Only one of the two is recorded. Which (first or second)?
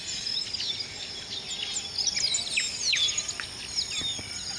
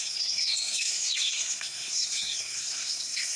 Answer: first